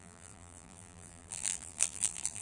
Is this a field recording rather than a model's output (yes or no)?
no